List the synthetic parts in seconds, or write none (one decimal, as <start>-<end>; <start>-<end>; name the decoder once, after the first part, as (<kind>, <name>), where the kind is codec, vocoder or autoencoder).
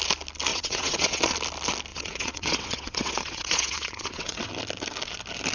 0.5-1.2 (vocoder, WaveNeXt); 1.9-4.5